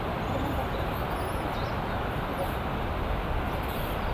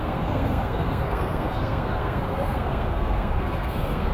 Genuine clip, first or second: first